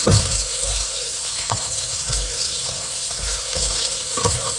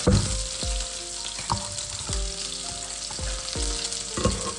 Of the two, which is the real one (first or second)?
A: second